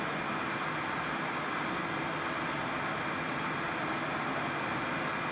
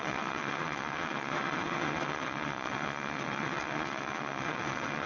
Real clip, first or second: first